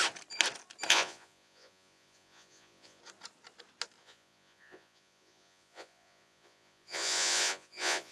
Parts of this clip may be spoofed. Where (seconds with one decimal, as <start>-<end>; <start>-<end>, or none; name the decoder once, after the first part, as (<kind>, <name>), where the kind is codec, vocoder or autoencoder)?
0.9-3.0 (vocoder, Vocos); 4.0-8.1